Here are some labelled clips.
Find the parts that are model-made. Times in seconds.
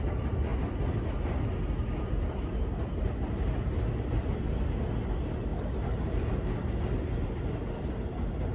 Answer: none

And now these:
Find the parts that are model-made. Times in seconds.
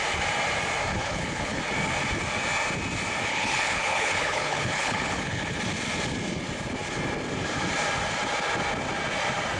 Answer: 0.9-1.6 (codec, HILCodec); 3.3-5.6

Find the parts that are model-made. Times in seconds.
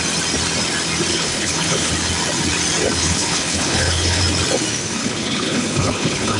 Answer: 1.1-1.9 (codec, HILCodec); 3.0-4.2; 5.0-6.4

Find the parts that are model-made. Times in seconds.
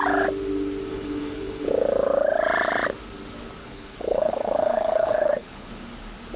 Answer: 0.9-1.7 (codec, HILCodec); 3.6-5.7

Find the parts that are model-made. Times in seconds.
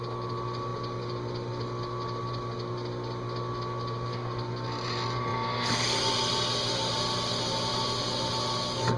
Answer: none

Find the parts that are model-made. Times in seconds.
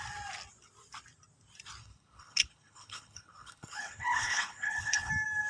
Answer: 1.8-5.1 (codec, HILCodec)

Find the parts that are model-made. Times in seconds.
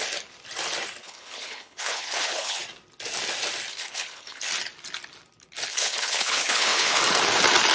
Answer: 1.0-2.6 (codec, HILCodec); 3.7-4.5; 5.7-7.0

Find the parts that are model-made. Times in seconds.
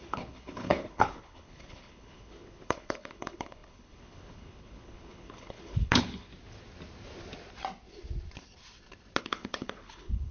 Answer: 0.0-6.3 (codec, HILCodec); 9.2-10.3